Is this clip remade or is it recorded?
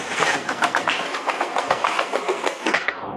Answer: remade